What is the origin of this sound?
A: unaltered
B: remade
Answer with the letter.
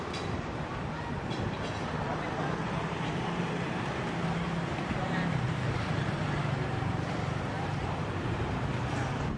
B